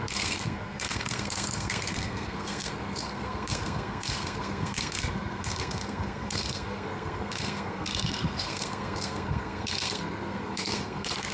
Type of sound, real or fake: fake